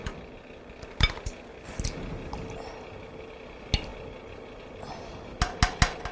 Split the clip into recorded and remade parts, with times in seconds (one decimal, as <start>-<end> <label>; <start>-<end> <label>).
0.0-6.1 recorded